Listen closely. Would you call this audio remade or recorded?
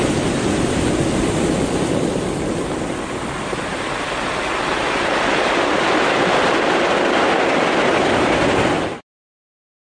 recorded